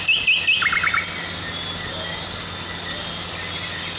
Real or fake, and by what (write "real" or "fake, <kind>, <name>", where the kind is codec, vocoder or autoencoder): real